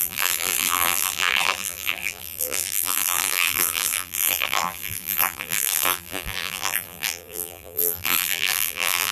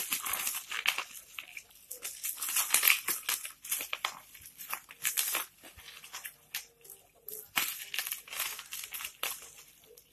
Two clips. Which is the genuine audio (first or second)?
second